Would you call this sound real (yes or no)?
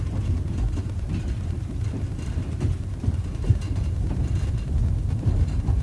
no